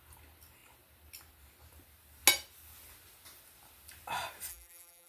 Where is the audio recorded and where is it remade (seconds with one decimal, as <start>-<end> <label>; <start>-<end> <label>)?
0.0-4.5 recorded; 4.5-5.1 remade